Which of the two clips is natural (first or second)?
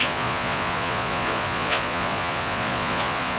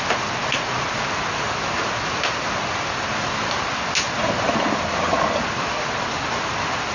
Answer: second